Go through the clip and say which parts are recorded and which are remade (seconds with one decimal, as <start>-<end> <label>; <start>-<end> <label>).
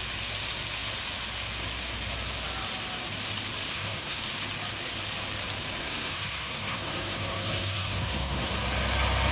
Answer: 0.0-3.7 recorded; 3.7-4.2 remade; 4.2-5.8 recorded; 5.8-8.5 remade; 8.5-9.3 recorded